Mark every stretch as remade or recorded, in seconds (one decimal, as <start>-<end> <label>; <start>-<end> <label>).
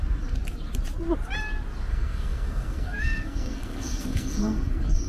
0.0-1.9 recorded; 1.9-5.1 remade